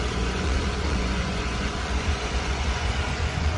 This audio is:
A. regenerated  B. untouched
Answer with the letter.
A